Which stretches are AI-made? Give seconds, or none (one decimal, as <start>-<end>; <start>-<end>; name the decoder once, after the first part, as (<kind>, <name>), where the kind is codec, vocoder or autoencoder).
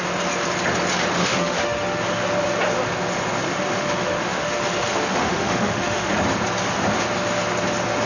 1.2-2.0 (autoencoder, DAC-VAE); 3.5-6.1